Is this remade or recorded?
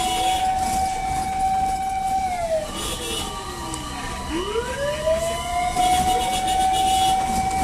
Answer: recorded